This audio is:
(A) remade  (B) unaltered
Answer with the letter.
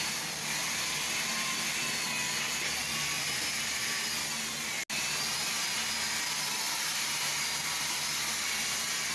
B